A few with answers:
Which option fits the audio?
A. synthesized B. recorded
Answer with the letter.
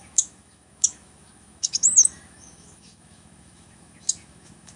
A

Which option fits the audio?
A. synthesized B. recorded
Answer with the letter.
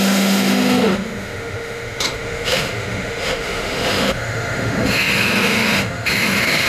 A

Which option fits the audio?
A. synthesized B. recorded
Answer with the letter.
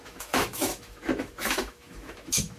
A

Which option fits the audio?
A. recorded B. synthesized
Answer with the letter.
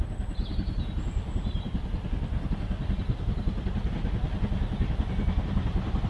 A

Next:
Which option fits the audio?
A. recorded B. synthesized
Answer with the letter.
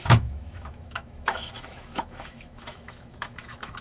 B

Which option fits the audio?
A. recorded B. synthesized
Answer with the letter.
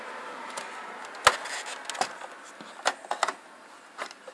A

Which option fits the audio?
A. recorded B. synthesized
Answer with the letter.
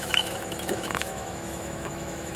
B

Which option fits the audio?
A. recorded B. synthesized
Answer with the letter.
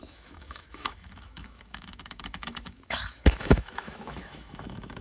B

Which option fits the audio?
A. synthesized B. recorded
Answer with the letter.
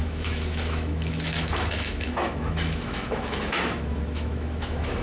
A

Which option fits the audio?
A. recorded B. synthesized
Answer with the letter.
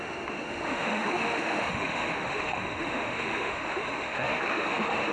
B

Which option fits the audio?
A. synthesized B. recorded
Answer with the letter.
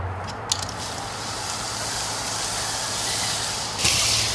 B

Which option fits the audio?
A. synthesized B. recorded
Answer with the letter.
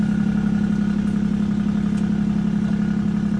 B